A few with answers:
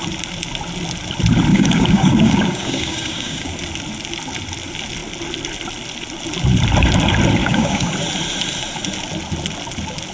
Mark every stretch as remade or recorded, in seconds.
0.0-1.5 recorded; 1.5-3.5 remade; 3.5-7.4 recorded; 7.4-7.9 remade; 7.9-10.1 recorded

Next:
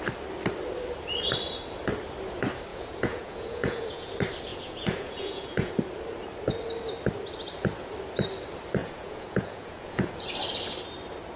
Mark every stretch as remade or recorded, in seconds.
0.0-2.7 recorded; 2.7-4.1 remade; 4.1-4.5 recorded; 4.5-5.7 remade; 5.7-8.8 recorded; 8.8-10.3 remade; 10.3-11.4 recorded

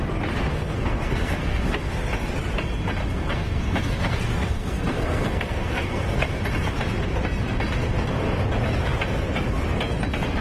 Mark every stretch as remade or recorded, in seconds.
0.0-0.5 recorded; 0.5-2.0 remade; 2.0-3.0 recorded; 3.0-6.4 remade; 6.4-10.4 recorded

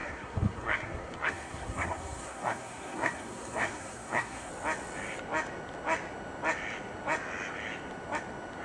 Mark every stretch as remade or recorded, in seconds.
0.0-4.5 remade; 4.5-8.6 recorded

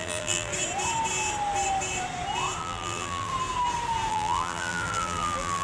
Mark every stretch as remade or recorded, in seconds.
0.0-0.5 remade; 0.5-2.6 recorded; 2.6-3.3 remade; 3.3-4.1 recorded; 4.1-5.6 remade

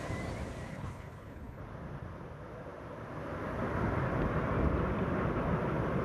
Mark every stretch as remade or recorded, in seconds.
0.0-0.7 recorded; 0.7-1.6 remade; 1.6-6.0 recorded

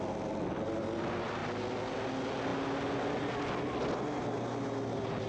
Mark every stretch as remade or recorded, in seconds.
0.0-5.3 recorded